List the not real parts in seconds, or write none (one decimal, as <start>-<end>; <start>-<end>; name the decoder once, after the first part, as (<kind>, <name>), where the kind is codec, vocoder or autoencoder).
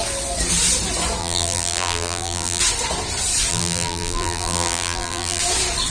1.2-2.6 (vocoder, BigVGAN v2); 3.5-5.4